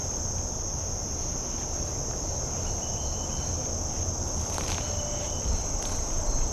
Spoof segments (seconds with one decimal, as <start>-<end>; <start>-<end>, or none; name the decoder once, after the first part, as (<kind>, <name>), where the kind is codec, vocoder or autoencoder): none